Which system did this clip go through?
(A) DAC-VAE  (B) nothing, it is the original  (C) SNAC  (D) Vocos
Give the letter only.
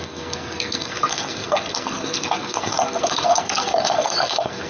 C